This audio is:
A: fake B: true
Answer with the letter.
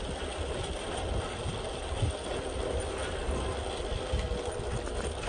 B